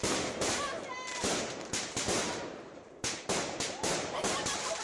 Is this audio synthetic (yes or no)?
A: yes